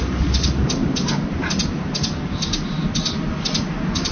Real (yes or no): yes